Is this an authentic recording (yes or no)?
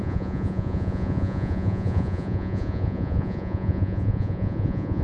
no